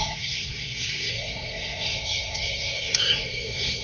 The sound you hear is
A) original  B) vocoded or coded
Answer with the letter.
B